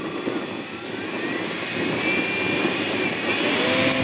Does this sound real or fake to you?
real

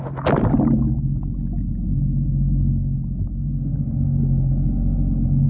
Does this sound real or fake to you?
real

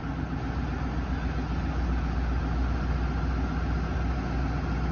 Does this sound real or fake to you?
real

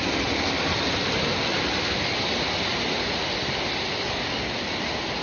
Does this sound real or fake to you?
real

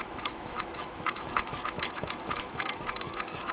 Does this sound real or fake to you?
fake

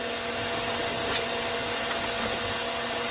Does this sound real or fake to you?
real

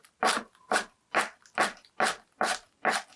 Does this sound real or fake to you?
real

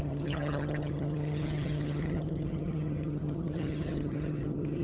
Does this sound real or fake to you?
fake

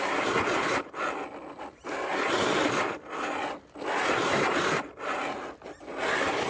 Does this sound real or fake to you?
real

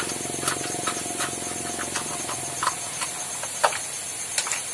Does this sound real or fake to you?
real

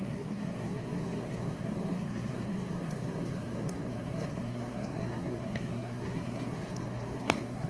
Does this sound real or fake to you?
fake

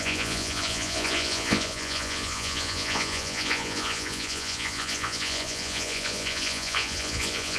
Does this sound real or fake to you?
fake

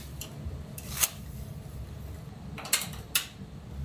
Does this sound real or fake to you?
real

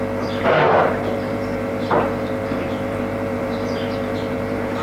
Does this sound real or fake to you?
fake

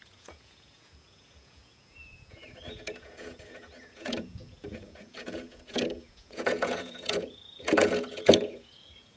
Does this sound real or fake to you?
fake